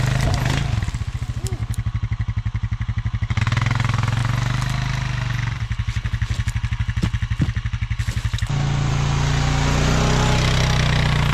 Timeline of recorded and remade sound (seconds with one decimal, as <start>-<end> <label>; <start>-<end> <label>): 0.0-11.3 recorded